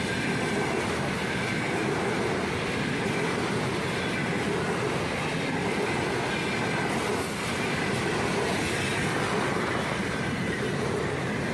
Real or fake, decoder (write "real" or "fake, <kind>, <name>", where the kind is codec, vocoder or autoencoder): real